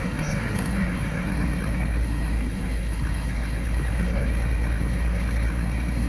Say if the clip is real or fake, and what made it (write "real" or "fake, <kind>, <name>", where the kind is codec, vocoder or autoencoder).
fake, codec, SNAC